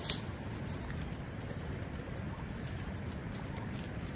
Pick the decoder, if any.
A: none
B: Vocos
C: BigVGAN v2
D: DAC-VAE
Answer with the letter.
A